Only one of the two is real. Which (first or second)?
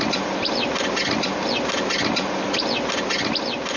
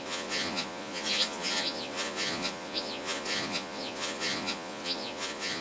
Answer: first